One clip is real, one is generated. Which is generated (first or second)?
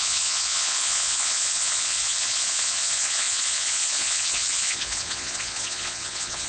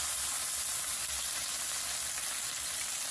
first